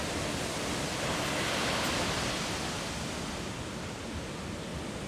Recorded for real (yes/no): yes